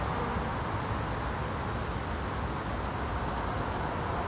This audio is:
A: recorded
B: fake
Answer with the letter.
A